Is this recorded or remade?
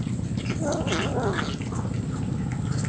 recorded